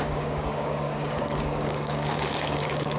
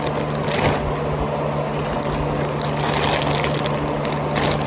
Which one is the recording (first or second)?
second